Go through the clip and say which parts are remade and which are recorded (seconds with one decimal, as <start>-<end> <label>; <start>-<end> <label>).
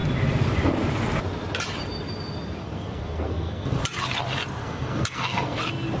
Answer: 0.0-2.6 recorded; 2.6-3.8 remade; 3.8-4.6 recorded; 4.6-5.6 remade; 5.6-6.0 recorded